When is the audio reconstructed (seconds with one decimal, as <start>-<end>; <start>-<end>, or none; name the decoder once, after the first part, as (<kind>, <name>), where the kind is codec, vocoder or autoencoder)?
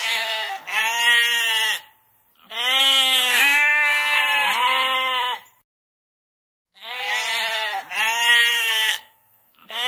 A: 0.0-0.8 (codec, SNAC); 2.8-4.2; 5.7-7.1; 8.5-9.9